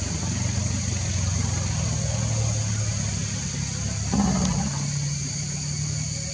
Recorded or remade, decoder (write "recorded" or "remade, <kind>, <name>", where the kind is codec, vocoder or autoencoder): recorded